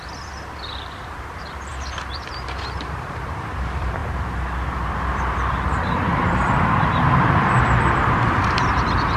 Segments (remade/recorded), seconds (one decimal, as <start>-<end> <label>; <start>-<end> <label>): 0.0-9.2 remade